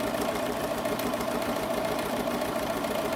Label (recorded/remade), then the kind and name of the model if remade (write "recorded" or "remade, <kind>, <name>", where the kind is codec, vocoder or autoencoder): remade, vocoder, BigVGAN v2